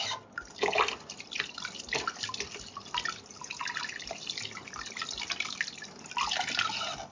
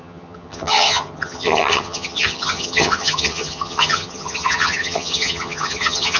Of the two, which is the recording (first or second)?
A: first